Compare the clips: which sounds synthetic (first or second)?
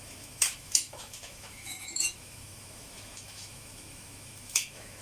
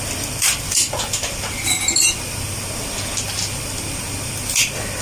first